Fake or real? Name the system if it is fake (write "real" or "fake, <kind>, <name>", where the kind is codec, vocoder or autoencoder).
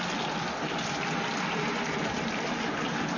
real